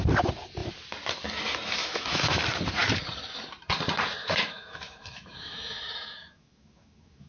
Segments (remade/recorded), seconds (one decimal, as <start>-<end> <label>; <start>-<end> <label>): 0.0-1.8 recorded; 1.8-2.4 remade; 2.4-4.2 recorded; 4.2-7.3 remade